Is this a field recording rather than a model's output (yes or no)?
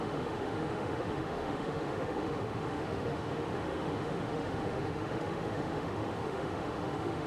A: no